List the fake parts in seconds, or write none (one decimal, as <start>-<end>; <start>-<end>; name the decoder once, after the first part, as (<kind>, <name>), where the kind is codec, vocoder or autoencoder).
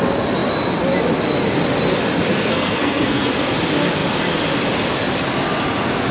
2.3-3.3 (codec, SNAC)